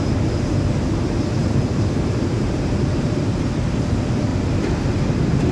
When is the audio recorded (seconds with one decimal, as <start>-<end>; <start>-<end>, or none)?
0.0-1.4; 3.5-4.3; 4.9-5.5